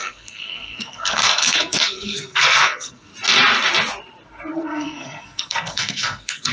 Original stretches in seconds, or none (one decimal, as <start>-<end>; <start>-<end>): 3.1-4.6